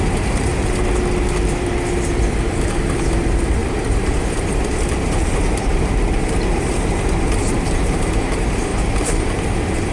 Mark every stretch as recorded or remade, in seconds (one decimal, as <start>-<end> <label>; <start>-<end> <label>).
0.0-0.5 remade; 0.5-2.5 recorded; 2.5-9.9 remade